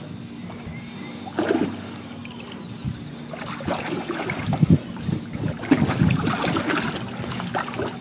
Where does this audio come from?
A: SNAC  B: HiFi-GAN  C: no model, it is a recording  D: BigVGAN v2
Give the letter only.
C